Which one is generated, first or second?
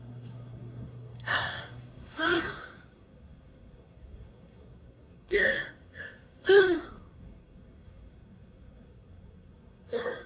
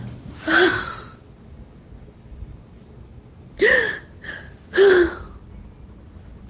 first